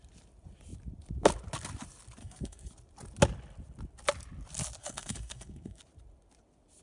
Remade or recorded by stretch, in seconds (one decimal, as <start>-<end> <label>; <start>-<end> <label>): 0.0-2.2 recorded; 2.2-2.7 remade; 2.7-4.8 recorded; 4.8-5.8 remade; 5.8-6.8 recorded